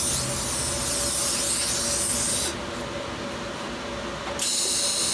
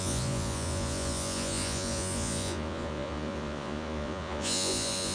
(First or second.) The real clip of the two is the first